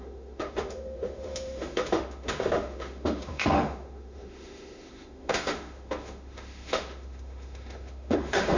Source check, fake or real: fake